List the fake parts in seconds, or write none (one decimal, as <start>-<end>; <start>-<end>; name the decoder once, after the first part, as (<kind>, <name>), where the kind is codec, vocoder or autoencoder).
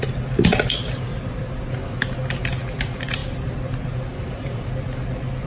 1.1-1.7 (vocoder, BigVGAN v2); 3.2-4.8